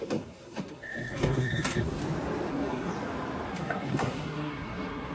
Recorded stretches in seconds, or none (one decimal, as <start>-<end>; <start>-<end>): 2.0-2.5; 2.9-3.5